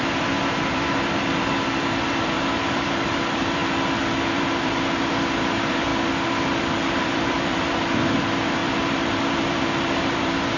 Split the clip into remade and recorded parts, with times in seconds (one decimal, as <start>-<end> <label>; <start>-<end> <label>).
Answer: 0.0-3.6 remade; 3.6-4.3 recorded; 4.3-5.9 remade; 5.9-6.6 recorded; 6.6-10.6 remade